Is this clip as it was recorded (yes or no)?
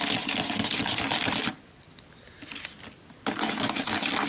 yes